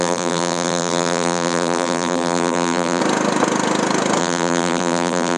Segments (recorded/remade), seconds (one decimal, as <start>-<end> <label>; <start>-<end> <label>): 0.0-3.0 remade; 3.0-4.2 recorded; 4.2-5.4 remade